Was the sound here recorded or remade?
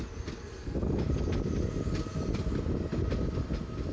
recorded